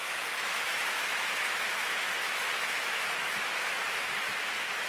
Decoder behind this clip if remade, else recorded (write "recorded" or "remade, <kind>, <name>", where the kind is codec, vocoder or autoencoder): remade, autoencoder, DAC-VAE